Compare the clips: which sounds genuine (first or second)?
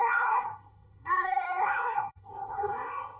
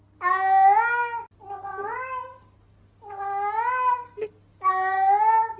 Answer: second